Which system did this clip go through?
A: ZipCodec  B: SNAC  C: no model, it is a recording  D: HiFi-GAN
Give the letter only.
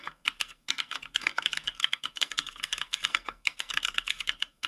B